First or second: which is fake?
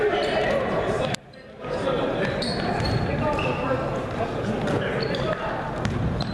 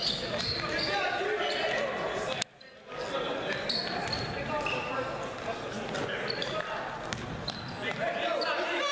first